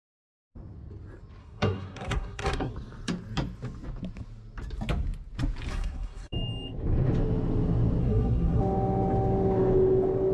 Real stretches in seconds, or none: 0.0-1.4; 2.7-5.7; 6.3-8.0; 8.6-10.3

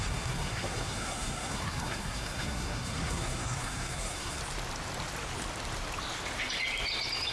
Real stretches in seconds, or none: 4.4-7.3

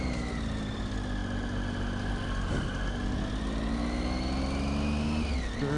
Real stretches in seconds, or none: 0.0-5.8